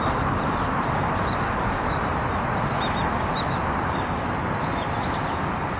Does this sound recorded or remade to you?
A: recorded